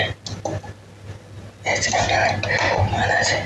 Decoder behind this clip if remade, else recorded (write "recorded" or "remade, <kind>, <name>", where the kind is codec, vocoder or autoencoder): recorded